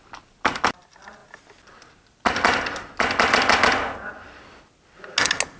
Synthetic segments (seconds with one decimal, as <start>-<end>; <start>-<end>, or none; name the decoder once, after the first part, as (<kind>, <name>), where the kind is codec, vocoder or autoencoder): none